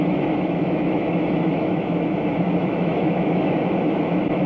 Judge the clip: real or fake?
fake